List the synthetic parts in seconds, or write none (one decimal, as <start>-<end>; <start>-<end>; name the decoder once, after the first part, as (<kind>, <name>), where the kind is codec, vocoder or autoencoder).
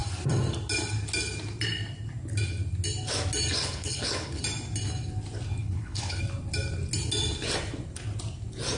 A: 3.6-4.4 (codec, HILCodec); 5.6-6.2